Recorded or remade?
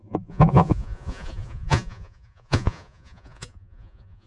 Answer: remade